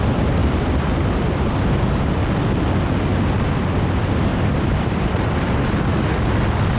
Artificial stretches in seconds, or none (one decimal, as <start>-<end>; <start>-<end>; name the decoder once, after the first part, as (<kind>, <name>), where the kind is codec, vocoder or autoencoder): 0.4-2.1 (vocoder, BigVGAN v2); 4.3-5.6